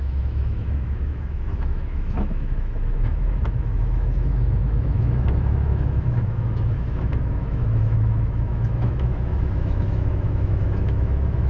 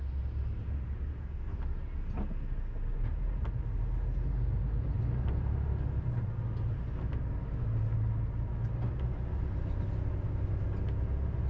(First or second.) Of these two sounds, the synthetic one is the first